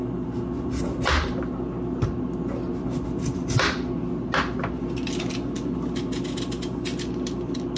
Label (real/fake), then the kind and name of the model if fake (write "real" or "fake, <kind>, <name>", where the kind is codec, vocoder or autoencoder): real